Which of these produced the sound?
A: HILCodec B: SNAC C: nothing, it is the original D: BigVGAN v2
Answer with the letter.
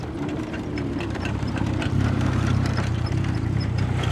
D